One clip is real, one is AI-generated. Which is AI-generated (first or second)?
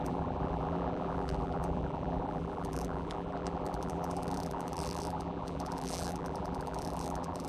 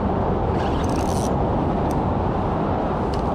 first